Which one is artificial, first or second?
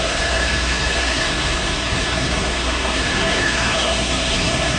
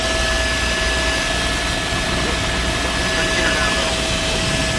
first